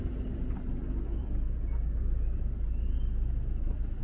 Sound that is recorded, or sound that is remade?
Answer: recorded